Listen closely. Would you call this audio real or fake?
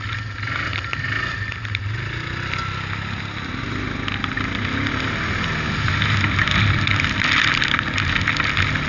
real